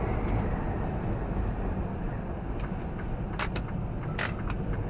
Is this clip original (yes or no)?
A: yes